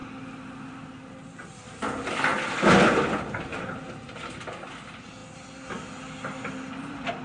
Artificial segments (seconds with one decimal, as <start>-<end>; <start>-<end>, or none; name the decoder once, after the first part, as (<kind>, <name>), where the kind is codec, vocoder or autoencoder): none